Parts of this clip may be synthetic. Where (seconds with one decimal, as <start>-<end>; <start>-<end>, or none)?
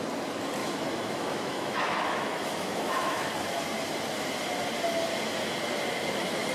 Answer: 0.6-3.3